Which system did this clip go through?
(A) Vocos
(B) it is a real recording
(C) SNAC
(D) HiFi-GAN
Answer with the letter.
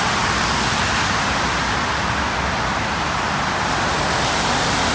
B